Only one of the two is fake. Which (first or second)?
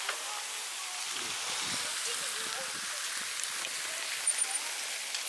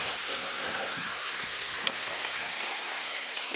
second